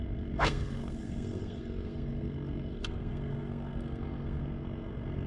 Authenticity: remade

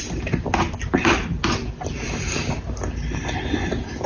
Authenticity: recorded